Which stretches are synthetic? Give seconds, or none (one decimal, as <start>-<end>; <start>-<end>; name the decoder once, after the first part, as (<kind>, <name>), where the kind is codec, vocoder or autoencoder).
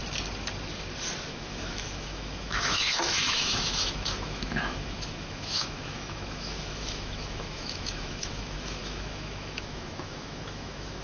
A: 1.3-11.0 (autoencoder, DAC-VAE)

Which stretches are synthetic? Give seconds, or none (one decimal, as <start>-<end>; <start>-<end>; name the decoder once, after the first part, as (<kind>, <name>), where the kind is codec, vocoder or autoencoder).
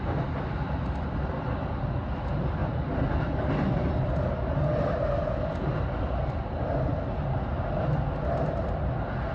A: none